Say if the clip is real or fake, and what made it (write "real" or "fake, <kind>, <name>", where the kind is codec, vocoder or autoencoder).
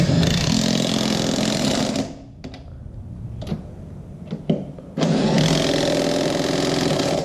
real